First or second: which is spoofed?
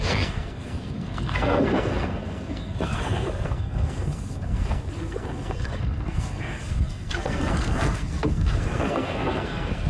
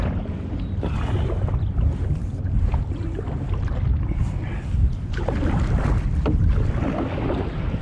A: first